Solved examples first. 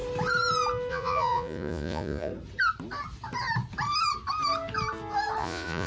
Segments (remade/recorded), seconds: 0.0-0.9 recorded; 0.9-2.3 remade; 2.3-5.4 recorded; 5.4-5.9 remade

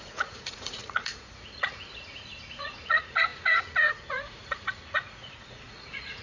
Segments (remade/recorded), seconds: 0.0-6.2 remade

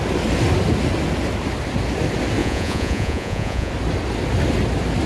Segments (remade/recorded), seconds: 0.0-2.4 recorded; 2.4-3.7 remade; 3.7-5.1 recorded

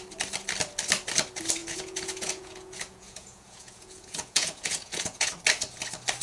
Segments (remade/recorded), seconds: 0.0-1.6 recorded; 1.6-5.3 remade; 5.3-6.2 recorded

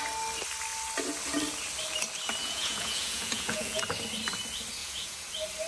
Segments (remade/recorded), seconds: 0.0-2.4 recorded; 2.4-3.8 remade; 3.8-4.8 recorded; 4.8-5.3 remade; 5.3-5.7 recorded

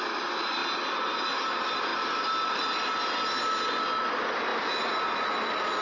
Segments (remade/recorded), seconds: 0.0-5.8 recorded